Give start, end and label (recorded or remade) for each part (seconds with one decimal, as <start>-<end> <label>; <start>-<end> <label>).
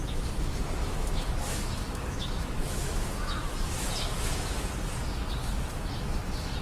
0.0-6.6 remade